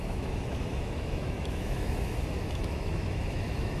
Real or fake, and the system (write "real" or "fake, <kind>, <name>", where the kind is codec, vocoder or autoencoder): fake, autoencoder, DAC-VAE